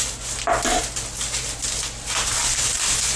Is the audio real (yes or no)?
yes